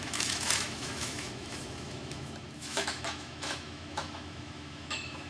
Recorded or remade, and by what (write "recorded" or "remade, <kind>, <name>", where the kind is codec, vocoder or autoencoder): remade, autoencoder, DAC-VAE